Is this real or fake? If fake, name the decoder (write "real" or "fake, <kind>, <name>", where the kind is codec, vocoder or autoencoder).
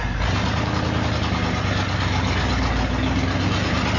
real